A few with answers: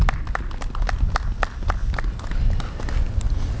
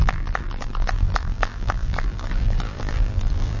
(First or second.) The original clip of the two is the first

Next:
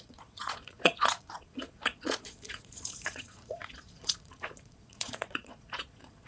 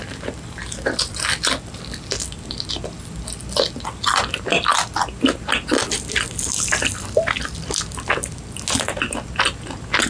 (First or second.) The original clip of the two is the second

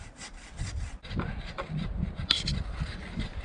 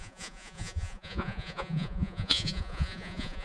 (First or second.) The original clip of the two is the first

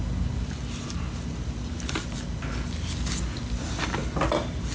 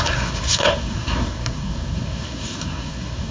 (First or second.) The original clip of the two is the first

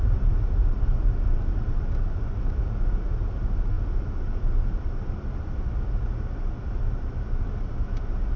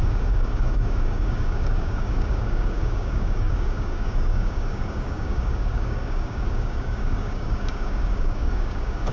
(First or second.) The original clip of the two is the first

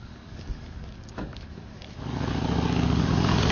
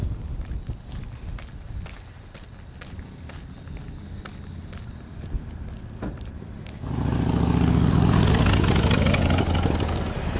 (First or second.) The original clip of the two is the second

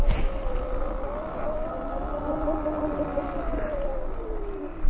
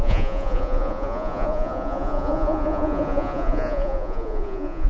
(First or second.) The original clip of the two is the first